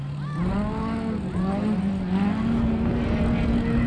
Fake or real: real